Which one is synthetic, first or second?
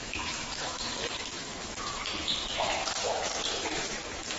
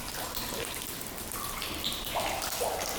first